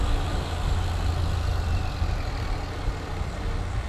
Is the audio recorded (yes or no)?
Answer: yes